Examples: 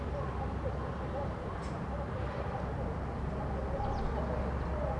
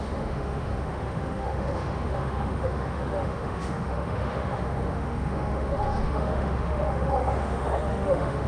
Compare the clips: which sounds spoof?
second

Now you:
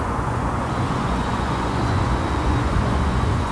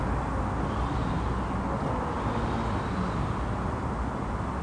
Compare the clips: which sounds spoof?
first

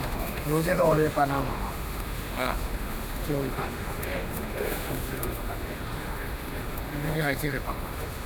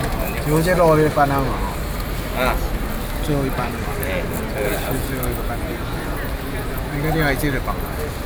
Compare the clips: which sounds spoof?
first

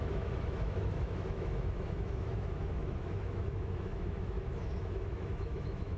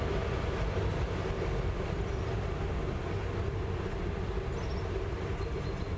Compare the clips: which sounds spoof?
first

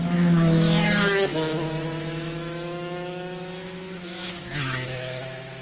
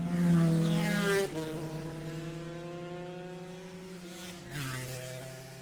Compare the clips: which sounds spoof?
first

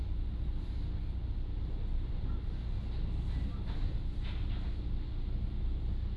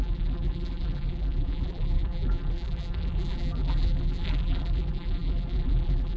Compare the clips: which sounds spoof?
second